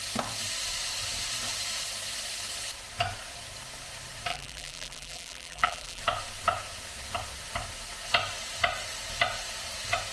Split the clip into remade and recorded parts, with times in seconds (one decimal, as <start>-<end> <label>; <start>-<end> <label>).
0.0-4.3 recorded; 4.3-6.0 remade; 6.0-10.1 recorded